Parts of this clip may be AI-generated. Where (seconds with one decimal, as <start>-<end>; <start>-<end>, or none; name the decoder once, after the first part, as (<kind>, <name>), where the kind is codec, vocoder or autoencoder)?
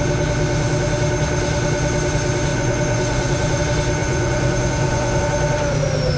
2.5-3.6 (vocoder, Vocos); 4.0-5.2